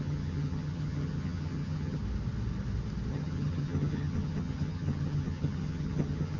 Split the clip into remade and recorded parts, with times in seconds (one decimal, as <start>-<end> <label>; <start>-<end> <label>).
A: 0.0-2.0 remade; 2.0-3.1 recorded; 3.1-6.4 remade